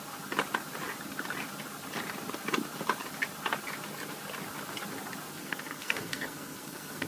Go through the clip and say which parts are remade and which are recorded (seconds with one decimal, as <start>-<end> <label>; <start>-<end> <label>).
0.0-5.4 recorded; 5.4-7.1 remade

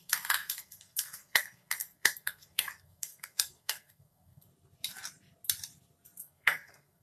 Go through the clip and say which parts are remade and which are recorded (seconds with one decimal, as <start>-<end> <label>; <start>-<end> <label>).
0.0-4.5 remade; 4.5-6.2 recorded; 6.2-7.0 remade

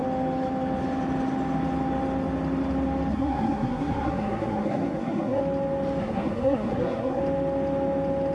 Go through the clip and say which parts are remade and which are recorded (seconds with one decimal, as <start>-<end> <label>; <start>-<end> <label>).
0.0-3.1 recorded; 3.1-5.4 remade; 5.4-6.0 recorded; 6.0-7.2 remade; 7.2-8.3 recorded

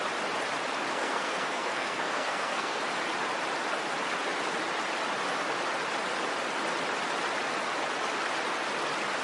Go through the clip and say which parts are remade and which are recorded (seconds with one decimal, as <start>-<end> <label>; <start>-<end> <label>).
0.0-0.9 recorded; 0.9-2.8 remade; 2.8-9.2 recorded

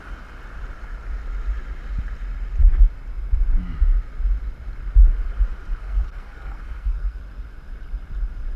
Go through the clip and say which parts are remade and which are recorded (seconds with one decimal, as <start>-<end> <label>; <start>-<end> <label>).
0.0-5.8 recorded; 5.8-7.2 remade; 7.2-8.6 recorded

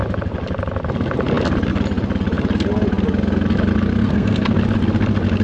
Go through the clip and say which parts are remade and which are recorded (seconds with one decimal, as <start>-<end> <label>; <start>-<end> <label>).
0.0-4.0 recorded; 4.0-4.5 remade; 4.5-5.4 recorded